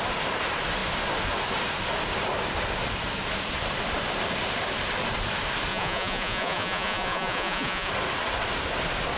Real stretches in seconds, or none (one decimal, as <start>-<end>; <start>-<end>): 0.0-5.7; 7.9-9.2